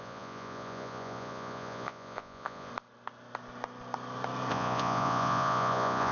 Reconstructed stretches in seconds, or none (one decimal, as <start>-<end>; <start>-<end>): 0.0-2.7; 4.5-6.1